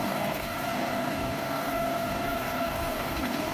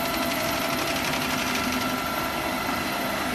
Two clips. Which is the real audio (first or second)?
second